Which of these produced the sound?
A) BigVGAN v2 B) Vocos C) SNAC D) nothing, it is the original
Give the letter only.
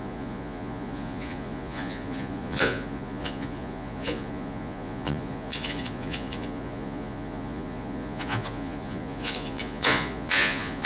B